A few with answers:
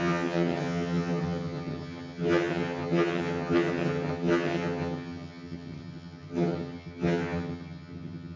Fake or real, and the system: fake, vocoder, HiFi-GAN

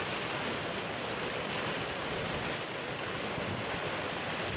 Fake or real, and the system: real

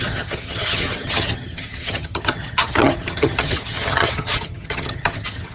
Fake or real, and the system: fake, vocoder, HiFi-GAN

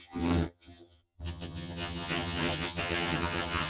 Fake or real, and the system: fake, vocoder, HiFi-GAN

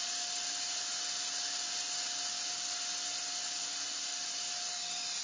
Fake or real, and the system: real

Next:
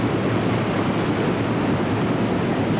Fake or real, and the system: real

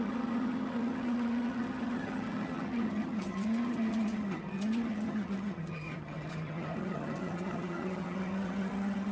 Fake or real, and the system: fake, vocoder, HiFi-GAN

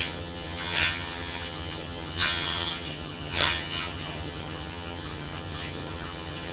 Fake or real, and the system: fake, vocoder, HiFi-GAN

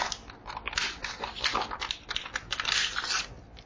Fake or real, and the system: real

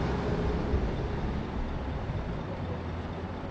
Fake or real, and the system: real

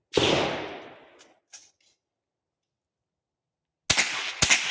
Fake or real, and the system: real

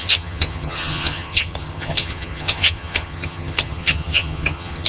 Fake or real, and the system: fake, vocoder, HiFi-GAN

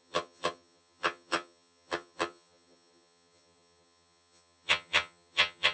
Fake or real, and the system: fake, vocoder, HiFi-GAN